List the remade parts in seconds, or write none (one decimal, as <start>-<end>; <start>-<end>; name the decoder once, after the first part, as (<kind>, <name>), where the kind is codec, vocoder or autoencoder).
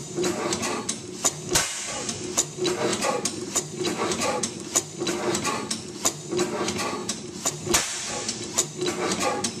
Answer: 0.0-0.8 (vocoder, BigVGAN v2); 2.9-4.4; 7.0-7.5